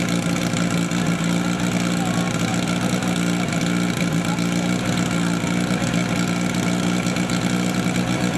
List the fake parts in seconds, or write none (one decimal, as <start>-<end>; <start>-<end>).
none